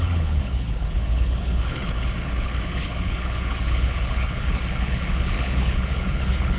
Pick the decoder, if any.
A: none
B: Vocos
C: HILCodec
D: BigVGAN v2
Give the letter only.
C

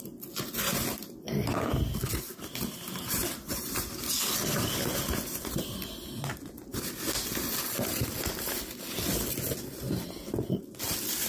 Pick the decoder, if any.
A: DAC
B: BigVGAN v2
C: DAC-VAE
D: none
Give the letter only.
D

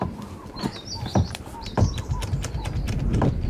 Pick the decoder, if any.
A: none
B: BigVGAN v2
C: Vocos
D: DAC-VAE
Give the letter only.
B